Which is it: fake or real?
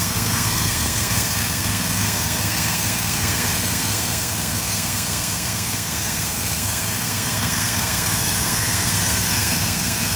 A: fake